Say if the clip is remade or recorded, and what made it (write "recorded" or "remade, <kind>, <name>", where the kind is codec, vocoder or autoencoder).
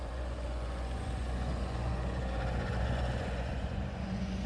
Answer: remade, vocoder, Vocos